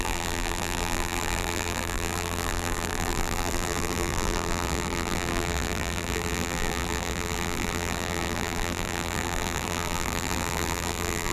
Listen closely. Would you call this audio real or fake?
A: fake